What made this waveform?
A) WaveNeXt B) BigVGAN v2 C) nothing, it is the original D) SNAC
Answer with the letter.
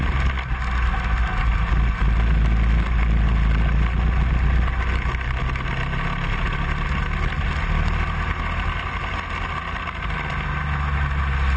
C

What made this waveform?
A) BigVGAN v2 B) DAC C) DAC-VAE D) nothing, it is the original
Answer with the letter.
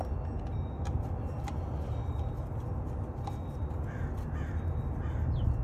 D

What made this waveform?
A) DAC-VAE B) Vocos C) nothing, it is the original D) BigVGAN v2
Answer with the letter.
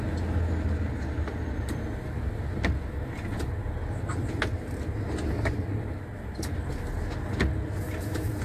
C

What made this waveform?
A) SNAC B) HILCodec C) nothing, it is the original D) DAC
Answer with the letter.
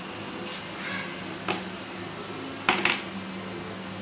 C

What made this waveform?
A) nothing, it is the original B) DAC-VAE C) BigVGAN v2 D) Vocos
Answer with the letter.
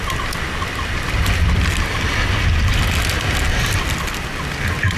A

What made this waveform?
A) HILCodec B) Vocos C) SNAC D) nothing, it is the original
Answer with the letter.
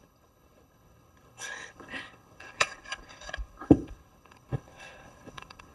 A